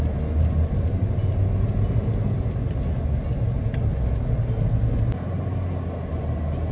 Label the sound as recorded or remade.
recorded